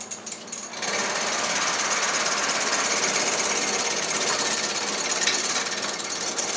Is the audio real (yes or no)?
yes